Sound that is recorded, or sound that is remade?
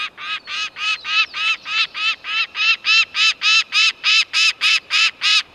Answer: recorded